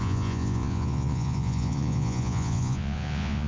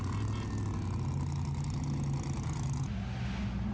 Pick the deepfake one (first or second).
first